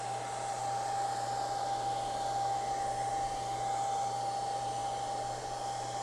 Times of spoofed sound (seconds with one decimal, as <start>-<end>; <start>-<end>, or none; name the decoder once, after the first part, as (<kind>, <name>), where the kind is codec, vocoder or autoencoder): none